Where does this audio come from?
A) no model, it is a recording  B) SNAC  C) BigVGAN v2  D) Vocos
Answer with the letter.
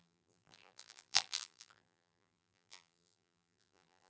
C